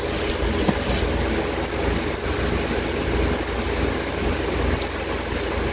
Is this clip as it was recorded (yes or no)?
yes